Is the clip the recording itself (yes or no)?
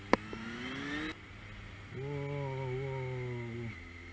yes